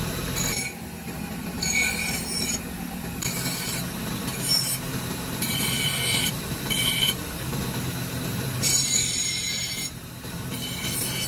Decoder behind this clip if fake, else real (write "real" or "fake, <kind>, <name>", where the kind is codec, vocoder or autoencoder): fake, vocoder, BigVGAN v2